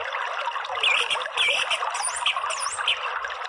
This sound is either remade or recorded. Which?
recorded